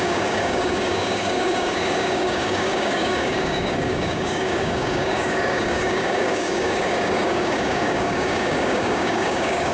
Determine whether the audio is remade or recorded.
remade